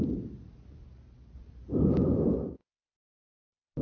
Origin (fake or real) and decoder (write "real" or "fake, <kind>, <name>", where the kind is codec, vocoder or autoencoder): real